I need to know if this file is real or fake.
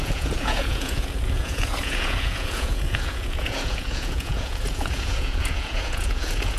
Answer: fake